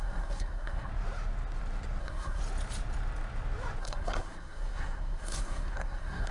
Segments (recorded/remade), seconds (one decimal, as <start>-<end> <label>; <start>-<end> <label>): 0.0-0.9 remade; 0.9-2.0 recorded; 2.0-2.4 remade; 2.4-3.8 recorded; 3.8-6.3 remade